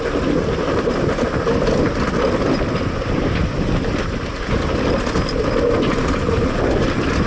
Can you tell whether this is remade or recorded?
recorded